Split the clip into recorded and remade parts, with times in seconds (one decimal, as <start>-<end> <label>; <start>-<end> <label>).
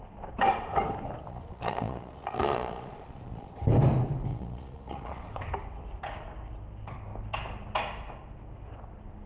0.0-1.3 recorded; 1.3-3.6 remade; 3.6-4.3 recorded; 4.3-5.5 remade; 5.5-9.3 recorded